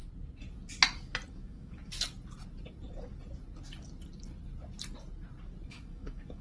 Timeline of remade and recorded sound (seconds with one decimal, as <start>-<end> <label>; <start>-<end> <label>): 0.0-1.3 recorded; 1.3-1.9 remade; 1.9-5.7 recorded; 5.7-6.4 remade